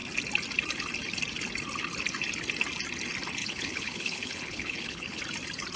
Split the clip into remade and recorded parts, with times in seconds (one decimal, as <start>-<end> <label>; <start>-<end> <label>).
0.0-3.4 recorded; 3.4-5.2 remade; 5.2-5.8 recorded